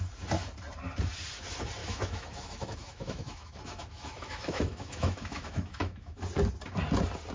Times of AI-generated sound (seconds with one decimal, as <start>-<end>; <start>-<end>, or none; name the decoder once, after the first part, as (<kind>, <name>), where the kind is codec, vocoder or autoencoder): 1.8-6.2 (autoencoder, DAC-VAE)